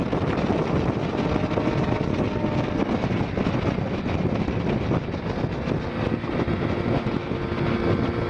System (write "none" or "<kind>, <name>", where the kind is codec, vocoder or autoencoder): none